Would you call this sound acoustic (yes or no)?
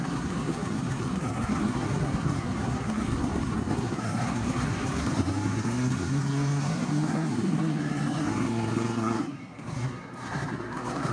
no